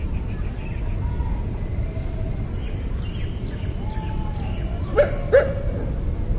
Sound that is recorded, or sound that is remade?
recorded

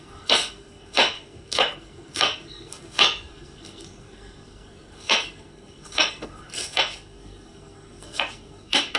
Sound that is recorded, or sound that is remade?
remade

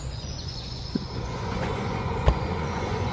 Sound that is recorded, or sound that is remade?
remade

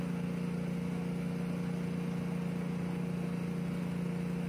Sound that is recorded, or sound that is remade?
recorded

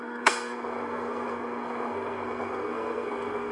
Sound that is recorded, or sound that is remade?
remade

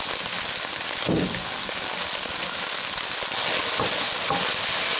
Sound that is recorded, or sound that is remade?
recorded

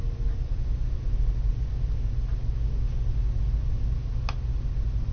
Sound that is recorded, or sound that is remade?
recorded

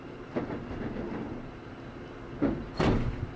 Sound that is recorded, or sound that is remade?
recorded